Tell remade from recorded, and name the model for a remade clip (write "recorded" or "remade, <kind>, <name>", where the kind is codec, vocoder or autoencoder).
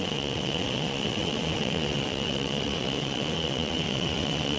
remade, vocoder, WaveNeXt